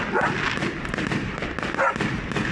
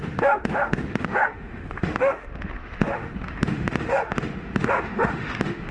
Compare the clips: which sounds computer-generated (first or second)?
second